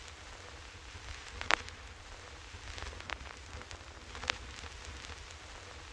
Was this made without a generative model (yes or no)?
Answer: yes